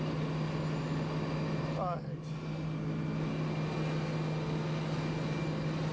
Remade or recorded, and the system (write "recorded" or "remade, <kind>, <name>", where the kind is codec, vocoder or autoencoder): recorded